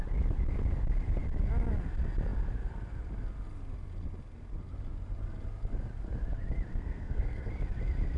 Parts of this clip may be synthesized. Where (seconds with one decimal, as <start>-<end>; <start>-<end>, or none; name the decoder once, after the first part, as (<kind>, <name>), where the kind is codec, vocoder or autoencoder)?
6.7-7.5 (codec, SNAC)